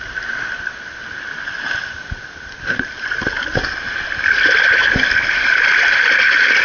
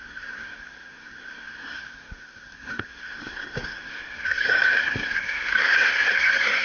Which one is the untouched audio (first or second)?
first